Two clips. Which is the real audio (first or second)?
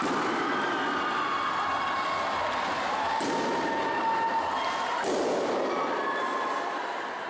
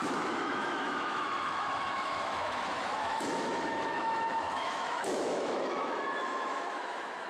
first